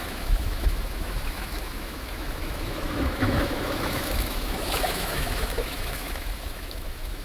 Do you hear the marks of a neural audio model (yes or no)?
yes